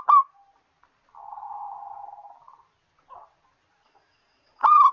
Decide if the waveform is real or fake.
real